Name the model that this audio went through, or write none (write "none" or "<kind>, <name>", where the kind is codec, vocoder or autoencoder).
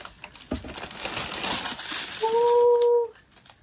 none